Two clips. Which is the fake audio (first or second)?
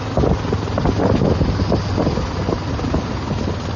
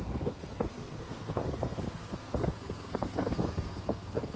second